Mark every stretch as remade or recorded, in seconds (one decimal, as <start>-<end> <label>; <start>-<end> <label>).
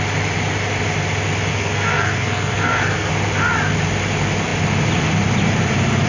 0.0-1.5 recorded; 1.5-3.1 remade; 3.1-6.1 recorded